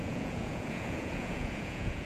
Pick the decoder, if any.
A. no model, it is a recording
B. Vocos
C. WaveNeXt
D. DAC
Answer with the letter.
B